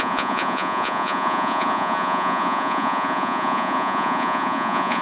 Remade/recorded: remade